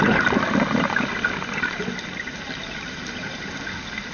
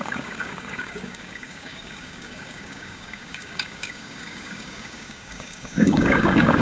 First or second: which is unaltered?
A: first